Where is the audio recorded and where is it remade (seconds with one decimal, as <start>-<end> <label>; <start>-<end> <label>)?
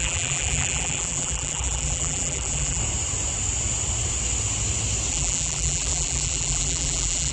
0.0-2.8 remade; 2.8-5.1 recorded; 5.1-7.3 remade